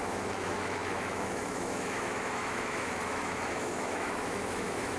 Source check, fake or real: fake